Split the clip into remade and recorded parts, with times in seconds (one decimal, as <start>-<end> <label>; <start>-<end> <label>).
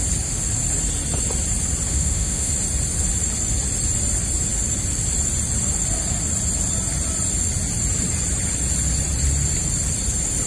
0.0-1.9 recorded; 1.9-2.5 remade; 2.5-10.5 recorded